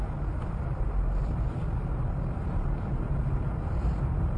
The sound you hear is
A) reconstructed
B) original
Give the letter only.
B